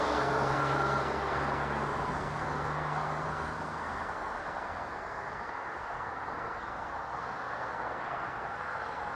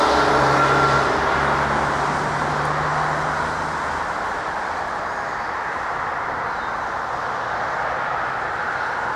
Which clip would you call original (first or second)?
second